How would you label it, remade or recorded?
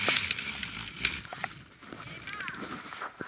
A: recorded